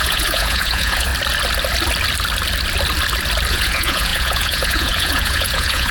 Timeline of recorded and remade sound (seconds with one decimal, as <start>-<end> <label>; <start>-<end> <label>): 0.0-1.1 remade; 1.1-3.5 recorded; 3.5-5.9 remade